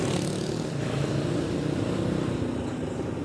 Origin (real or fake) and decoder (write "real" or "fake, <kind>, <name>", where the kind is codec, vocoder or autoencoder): real